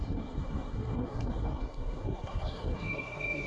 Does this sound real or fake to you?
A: fake